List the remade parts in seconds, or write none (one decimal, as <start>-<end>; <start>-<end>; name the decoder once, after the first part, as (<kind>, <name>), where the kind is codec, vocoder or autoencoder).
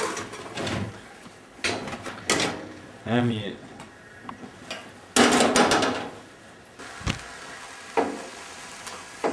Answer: 3.0-3.9 (vocoder, WaveNeXt)